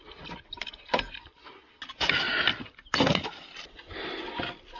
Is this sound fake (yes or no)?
no